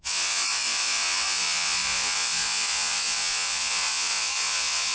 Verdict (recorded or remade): remade